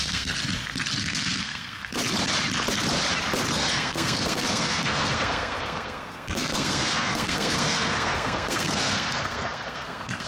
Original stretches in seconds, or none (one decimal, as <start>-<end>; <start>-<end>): 0.4-1.0; 2.0-3.5